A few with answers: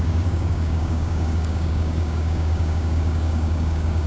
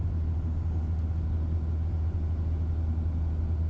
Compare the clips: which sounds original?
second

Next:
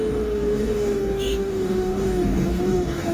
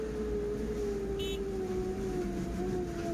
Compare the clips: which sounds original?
second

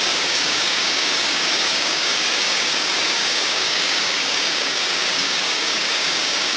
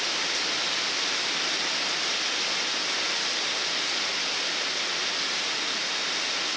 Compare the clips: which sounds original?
second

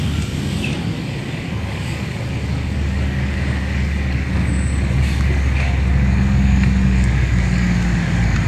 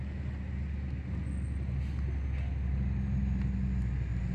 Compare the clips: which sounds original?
second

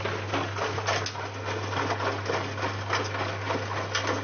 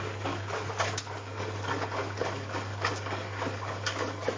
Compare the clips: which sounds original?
first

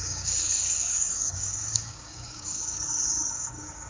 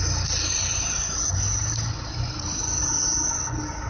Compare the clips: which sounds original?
second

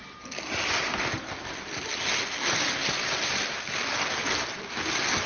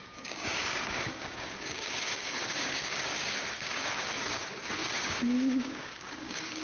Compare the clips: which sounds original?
first